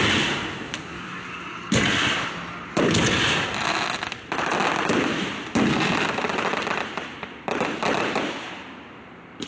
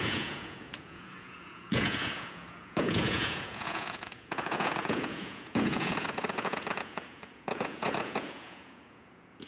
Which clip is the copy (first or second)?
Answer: second